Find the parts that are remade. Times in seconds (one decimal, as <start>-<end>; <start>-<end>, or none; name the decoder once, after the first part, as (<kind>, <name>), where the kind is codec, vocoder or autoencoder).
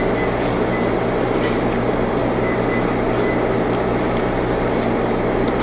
none